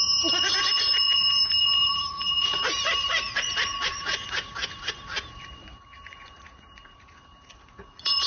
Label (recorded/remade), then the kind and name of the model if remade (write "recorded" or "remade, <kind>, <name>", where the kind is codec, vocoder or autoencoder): remade, vocoder, Vocos